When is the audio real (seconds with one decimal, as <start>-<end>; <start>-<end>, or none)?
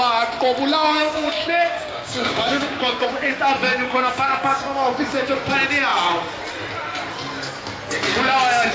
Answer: 0.0-0.7; 3.3-3.7; 5.5-8.7